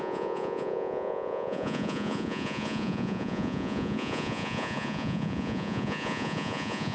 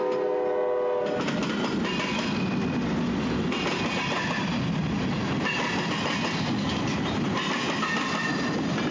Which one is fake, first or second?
first